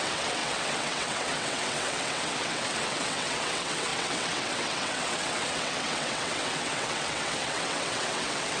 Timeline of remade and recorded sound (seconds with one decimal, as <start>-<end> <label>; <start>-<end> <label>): 0.0-8.6 remade